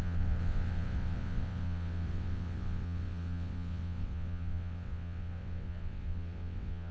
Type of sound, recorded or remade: remade